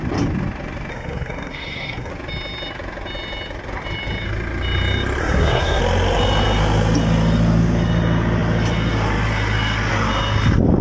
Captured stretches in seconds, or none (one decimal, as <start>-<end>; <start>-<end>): 0.0-0.9; 2.1-5.2; 5.8-10.8